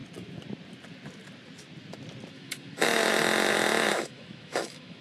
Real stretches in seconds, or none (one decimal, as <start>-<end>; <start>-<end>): 0.0-2.3; 3.0-3.9